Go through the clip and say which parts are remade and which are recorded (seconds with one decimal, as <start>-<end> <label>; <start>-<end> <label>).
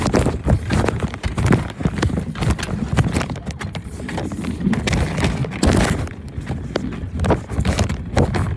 0.0-8.6 recorded